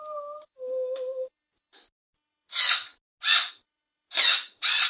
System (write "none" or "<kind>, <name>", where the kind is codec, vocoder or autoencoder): none